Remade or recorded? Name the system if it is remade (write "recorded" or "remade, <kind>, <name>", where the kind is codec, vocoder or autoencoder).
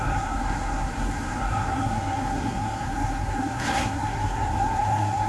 remade, codec, SNAC